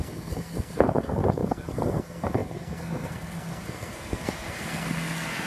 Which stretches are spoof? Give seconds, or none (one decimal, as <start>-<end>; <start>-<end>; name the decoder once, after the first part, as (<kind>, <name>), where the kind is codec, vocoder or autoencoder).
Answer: 0.0-5.5 (codec, SNAC)